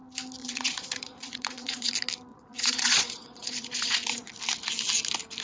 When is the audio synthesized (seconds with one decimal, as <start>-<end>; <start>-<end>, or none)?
0.4-1.9; 2.3-4.3